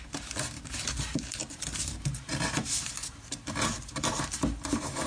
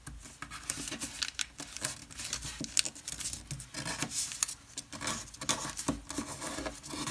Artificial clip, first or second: first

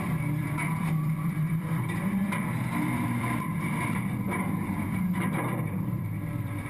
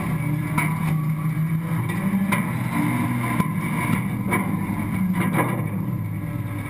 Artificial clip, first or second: first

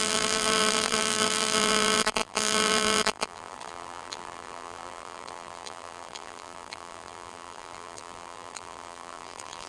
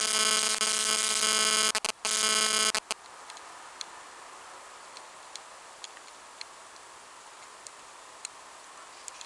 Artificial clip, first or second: first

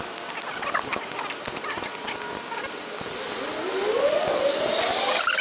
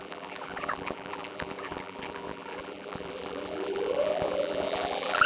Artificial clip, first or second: second